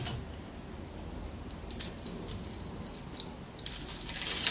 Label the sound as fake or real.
real